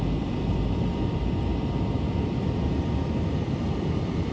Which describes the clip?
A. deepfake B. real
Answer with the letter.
A